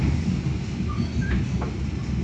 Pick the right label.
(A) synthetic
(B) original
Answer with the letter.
B